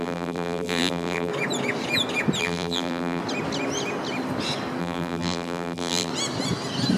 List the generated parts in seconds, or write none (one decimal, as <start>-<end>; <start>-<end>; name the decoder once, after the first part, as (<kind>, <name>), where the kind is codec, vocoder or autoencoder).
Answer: 0.0-1.3 (vocoder, BigVGAN v2); 2.4-3.2; 4.8-6.1